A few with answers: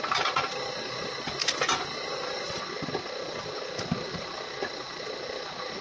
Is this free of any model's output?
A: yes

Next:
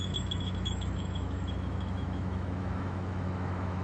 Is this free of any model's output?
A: no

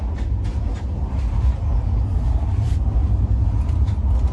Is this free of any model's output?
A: yes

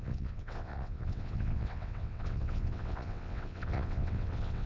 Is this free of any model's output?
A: no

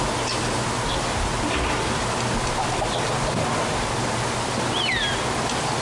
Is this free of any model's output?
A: yes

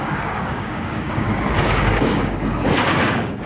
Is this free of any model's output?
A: no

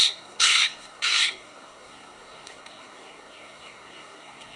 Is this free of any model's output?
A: no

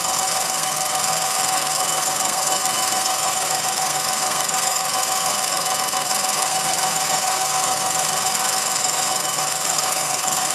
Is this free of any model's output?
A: no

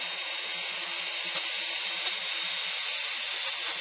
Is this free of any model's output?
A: yes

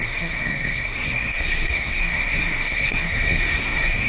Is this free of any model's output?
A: no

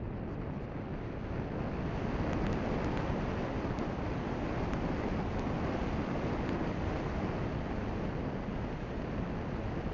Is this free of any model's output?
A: yes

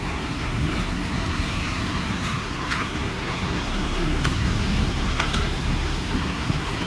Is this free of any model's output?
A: no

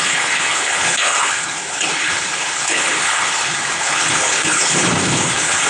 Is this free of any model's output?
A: no